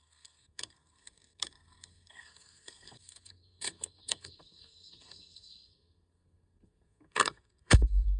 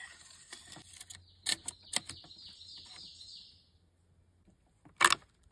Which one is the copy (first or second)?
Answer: first